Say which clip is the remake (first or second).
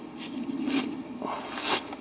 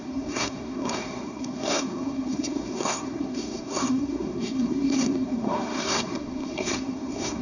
second